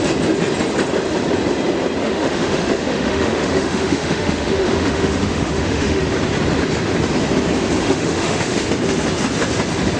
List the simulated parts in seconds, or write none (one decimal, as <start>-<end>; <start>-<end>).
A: 2.0-6.0; 7.8-8.7